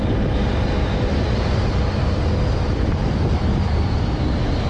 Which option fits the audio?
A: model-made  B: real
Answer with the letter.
B